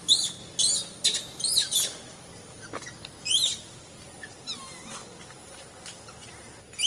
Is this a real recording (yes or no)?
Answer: yes